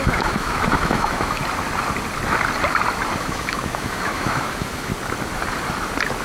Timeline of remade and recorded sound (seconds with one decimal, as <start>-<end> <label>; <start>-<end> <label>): 0.0-1.4 remade; 1.4-3.2 recorded; 3.2-4.9 remade; 4.9-6.2 recorded